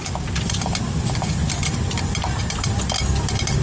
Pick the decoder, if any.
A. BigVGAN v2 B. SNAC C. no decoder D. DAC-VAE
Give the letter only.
C